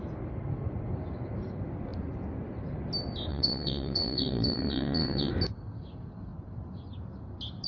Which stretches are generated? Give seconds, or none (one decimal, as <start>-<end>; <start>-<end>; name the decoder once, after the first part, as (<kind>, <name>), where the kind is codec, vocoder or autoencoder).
3.3-5.3 (vocoder, WaveNeXt)